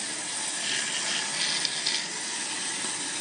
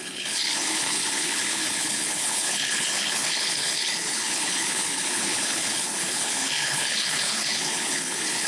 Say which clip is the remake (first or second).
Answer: second